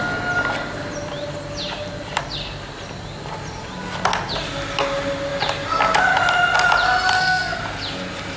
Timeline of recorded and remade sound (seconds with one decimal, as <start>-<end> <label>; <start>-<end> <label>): 0.0-7.1 recorded; 7.1-7.6 remade; 7.6-8.4 recorded